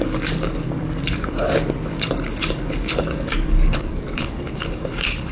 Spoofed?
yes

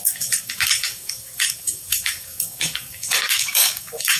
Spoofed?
yes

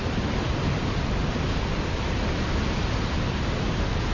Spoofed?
no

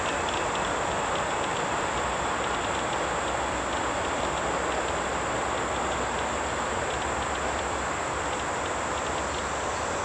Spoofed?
no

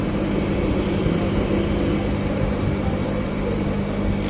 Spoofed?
no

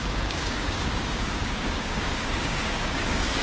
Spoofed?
yes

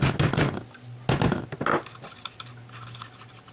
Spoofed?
no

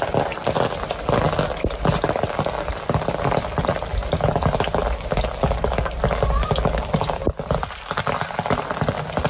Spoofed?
no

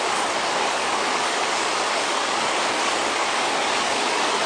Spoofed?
yes